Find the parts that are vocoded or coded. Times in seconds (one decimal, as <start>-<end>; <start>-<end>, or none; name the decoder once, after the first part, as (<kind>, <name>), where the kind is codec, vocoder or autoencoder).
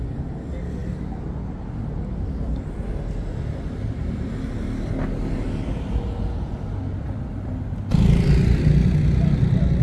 none